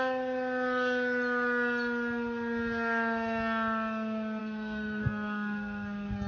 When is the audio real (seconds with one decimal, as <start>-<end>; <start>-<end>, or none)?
0.0-4.4

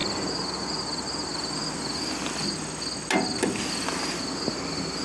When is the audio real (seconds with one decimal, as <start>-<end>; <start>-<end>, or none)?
0.0-5.0

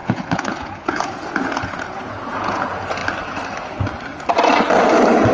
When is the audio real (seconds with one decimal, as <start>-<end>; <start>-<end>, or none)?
3.0-5.3

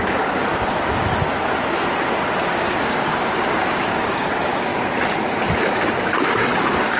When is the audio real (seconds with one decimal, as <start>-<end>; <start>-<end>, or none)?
0.4-2.5; 4.7-5.7

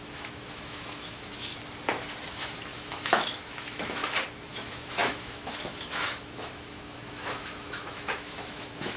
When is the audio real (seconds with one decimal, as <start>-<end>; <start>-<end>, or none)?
1.5-2.3; 4.0-4.5

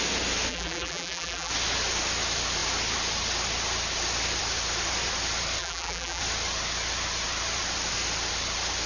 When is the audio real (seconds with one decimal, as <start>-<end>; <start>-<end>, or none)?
0.0-0.5; 1.5-5.6; 6.2-8.9

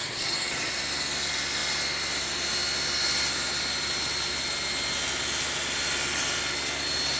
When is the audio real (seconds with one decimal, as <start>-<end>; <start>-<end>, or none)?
0.7-7.2

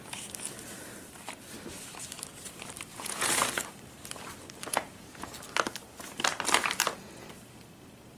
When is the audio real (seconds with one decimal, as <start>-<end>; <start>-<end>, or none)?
0.0-2.9; 3.4-4.7; 5.3-8.2